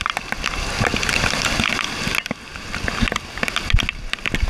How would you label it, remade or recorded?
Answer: recorded